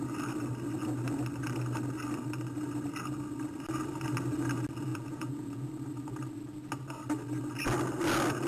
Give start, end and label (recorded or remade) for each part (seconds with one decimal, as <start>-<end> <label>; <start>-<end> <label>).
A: 0.0-4.9 recorded; 4.9-5.7 remade; 5.7-8.5 recorded